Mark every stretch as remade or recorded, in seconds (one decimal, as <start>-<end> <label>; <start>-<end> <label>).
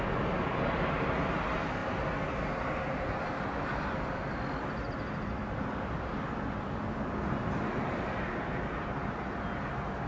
0.0-10.1 recorded